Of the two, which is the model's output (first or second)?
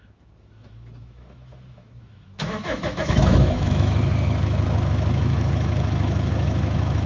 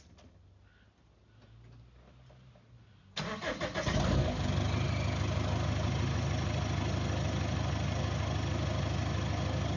first